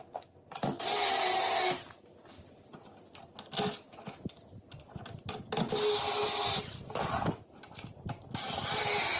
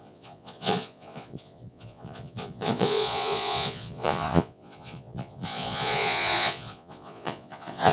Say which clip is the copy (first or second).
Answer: second